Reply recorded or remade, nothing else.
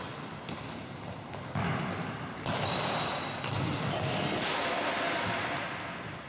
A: recorded